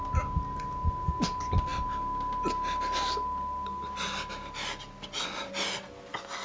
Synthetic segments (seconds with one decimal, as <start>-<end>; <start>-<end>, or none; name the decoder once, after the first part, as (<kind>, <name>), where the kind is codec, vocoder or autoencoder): none